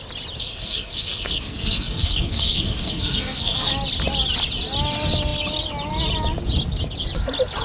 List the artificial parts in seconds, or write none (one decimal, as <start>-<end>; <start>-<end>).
0.4-3.7